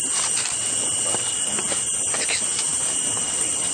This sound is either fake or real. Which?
real